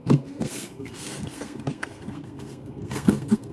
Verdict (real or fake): fake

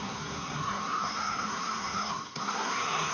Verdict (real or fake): fake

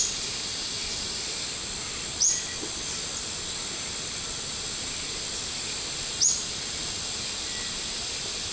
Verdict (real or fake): real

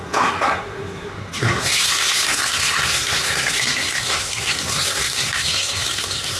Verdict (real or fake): fake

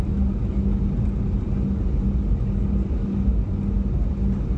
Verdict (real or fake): real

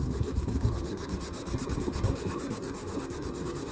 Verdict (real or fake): fake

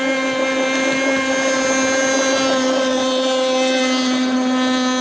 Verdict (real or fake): real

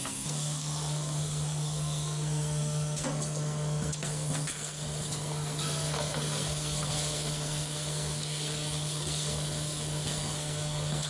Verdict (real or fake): fake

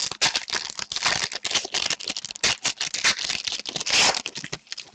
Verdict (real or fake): real